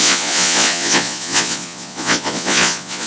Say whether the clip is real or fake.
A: fake